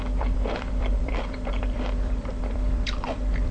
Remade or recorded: remade